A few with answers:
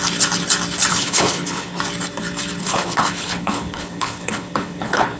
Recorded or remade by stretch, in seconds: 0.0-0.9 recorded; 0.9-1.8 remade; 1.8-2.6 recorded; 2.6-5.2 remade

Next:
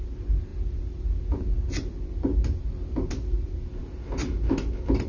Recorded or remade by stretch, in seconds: 0.0-5.1 recorded

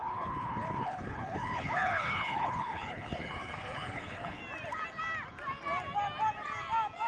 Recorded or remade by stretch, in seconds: 0.0-4.4 remade; 4.4-7.1 recorded

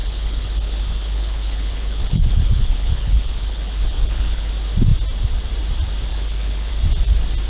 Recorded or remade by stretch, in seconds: 0.0-4.5 remade; 4.5-6.1 recorded; 6.1-6.7 remade; 6.7-7.5 recorded

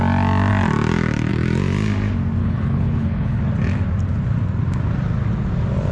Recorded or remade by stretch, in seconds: 0.0-2.4 recorded; 2.4-3.4 remade; 3.4-5.9 recorded

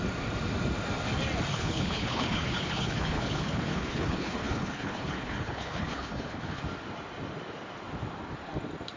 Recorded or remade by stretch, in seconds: 0.0-1.5 recorded; 1.5-6.6 remade; 6.6-9.0 recorded

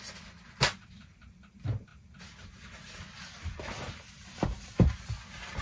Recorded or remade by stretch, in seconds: 0.0-5.6 recorded

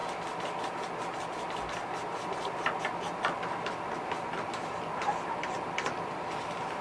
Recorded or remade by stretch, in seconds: 0.0-6.8 recorded